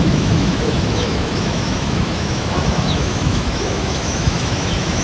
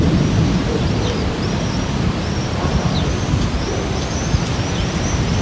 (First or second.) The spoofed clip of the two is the first